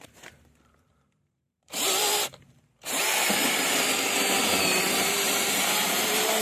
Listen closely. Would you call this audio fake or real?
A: fake